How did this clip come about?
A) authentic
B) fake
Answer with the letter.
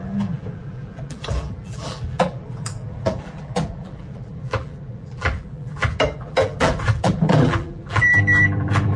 B